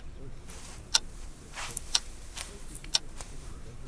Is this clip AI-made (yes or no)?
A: yes